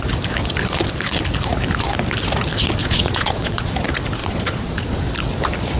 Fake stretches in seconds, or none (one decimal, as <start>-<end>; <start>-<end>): 2.8-3.7; 4.2-5.1